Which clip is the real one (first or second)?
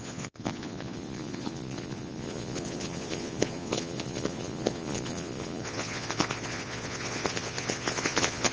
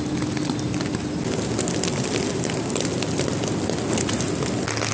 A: second